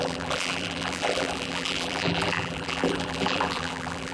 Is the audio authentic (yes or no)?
no